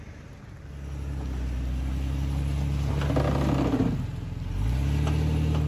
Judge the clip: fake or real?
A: real